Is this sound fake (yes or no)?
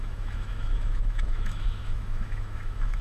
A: yes